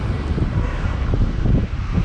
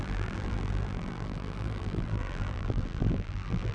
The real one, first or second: first